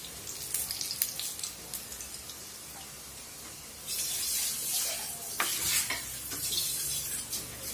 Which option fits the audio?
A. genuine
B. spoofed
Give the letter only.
A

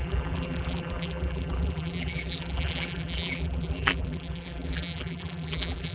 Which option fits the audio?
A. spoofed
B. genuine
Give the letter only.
A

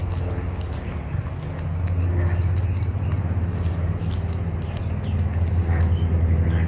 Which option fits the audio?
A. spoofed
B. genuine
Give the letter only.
B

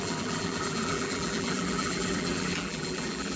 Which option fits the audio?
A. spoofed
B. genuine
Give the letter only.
A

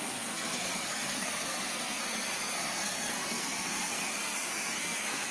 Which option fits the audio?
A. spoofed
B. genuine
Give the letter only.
A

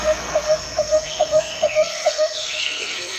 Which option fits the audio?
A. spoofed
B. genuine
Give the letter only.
A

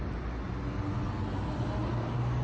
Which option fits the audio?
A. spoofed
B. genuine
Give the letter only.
B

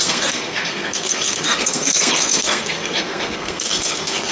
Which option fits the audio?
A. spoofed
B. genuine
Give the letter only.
A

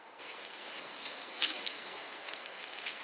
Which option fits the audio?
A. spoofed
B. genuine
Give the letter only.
A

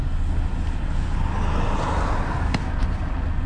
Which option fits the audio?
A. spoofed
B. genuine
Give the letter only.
B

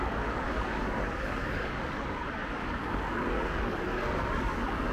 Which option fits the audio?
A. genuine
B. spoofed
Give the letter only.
B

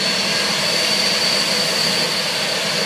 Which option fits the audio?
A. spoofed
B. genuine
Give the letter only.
B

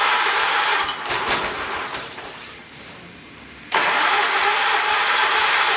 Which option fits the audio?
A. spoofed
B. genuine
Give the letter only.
A